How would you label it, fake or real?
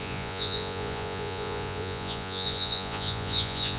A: fake